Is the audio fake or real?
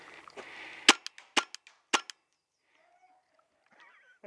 real